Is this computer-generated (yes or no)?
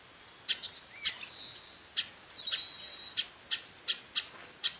no